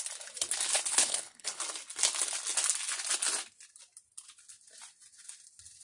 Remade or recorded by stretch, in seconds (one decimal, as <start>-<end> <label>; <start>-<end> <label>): 0.0-0.9 recorded; 0.9-1.6 remade; 1.6-5.8 recorded